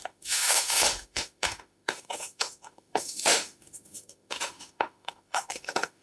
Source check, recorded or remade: remade